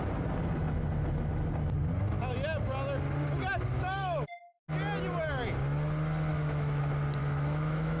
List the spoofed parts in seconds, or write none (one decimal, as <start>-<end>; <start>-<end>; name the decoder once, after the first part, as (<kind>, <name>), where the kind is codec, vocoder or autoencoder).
3.7-4.4 (autoencoder, DAC-VAE); 6.3-6.8; 7.2-8.0